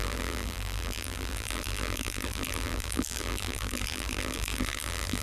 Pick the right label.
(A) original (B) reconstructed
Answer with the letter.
B